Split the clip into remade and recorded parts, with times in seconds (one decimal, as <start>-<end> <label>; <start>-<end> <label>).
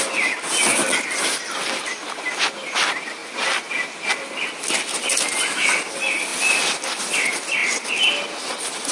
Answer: 0.0-8.9 recorded